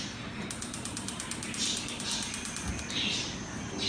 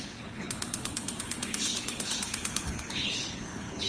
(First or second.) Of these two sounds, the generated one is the second